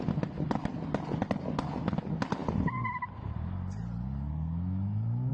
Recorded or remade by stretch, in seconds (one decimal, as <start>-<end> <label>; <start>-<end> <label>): 0.0-5.3 recorded